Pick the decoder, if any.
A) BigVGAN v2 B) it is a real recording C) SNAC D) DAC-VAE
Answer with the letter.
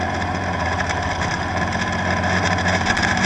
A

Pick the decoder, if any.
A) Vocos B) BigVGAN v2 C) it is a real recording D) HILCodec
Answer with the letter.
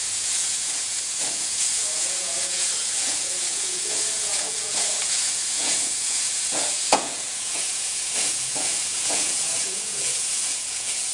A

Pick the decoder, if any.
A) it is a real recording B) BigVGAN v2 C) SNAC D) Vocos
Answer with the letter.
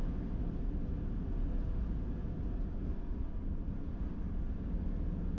A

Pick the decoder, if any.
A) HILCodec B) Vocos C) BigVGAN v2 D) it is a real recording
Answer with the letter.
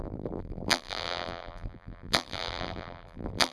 C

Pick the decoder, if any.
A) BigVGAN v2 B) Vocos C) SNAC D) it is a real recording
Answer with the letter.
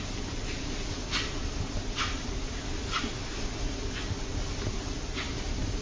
D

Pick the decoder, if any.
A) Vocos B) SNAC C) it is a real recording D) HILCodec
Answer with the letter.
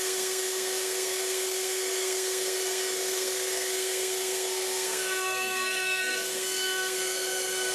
B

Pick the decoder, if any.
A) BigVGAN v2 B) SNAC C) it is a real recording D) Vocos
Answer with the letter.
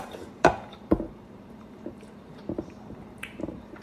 A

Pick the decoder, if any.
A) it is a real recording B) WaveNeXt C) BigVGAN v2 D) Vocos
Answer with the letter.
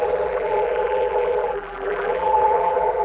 C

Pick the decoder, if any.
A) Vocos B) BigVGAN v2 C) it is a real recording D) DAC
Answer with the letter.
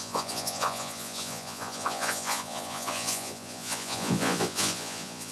A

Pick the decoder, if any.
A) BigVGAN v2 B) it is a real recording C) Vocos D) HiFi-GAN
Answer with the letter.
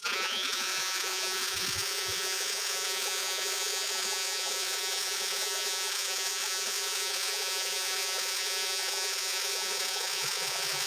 C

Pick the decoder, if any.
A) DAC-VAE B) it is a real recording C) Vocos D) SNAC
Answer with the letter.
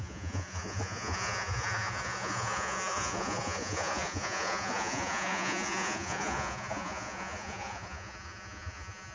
C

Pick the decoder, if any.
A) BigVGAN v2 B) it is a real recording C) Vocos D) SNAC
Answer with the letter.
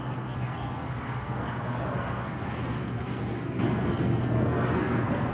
D